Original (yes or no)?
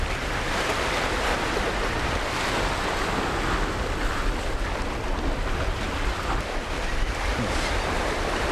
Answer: yes